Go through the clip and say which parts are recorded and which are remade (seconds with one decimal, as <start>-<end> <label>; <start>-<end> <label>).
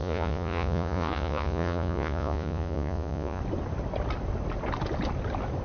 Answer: 0.0-3.4 remade; 3.4-5.6 recorded